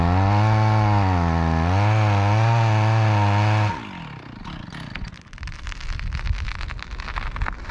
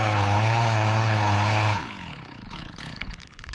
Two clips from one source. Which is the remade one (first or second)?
second